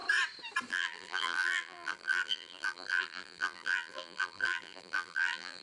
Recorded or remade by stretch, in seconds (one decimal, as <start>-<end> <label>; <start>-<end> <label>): 0.0-0.7 recorded; 0.7-5.6 remade